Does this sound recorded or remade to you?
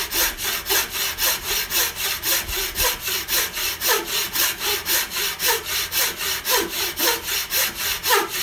recorded